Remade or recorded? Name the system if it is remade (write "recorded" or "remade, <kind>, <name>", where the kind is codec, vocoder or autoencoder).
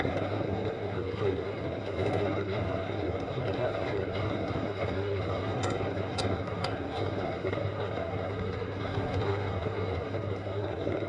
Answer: remade, codec, SNAC